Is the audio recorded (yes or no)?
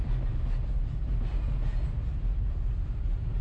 yes